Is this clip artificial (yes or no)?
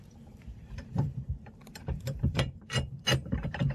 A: yes